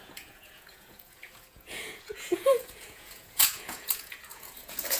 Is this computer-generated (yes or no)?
yes